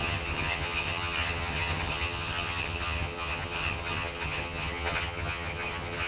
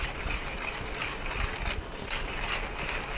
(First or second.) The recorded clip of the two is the second